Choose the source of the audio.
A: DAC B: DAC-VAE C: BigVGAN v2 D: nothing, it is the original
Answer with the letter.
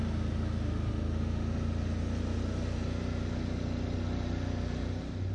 D